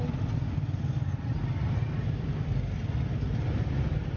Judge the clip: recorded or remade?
recorded